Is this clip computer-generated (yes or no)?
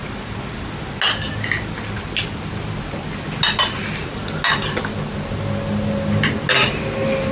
no